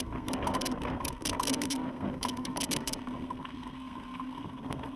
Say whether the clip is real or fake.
fake